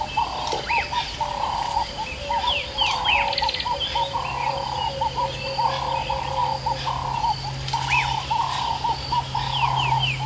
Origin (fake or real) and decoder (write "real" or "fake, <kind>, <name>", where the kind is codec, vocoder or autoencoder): real